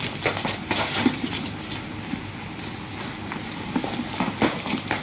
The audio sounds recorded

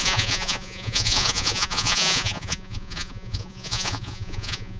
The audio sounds remade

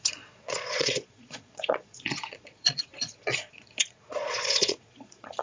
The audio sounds remade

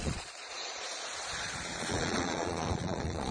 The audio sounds remade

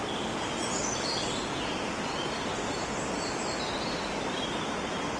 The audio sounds recorded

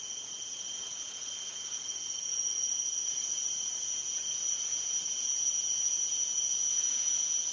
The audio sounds remade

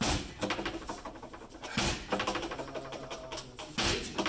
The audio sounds recorded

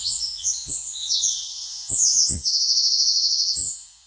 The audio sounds remade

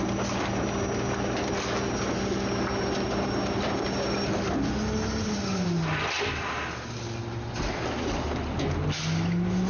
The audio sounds recorded